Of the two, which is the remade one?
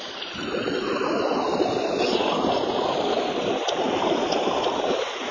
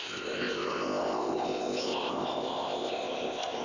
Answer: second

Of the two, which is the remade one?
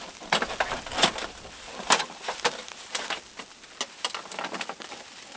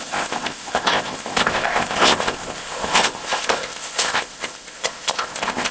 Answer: second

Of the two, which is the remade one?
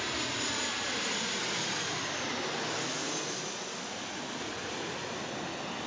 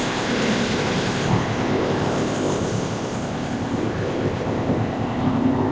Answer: second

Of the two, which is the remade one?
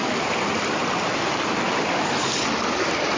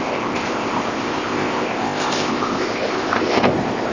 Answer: second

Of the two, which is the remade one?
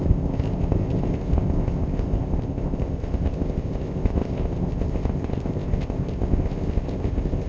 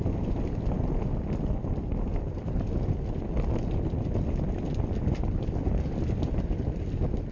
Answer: first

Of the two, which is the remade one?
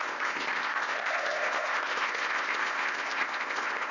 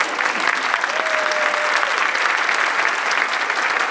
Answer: first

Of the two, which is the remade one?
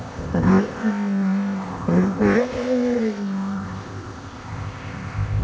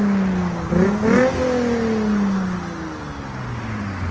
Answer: first